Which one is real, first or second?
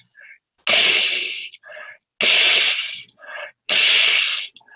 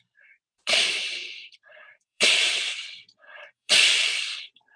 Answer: first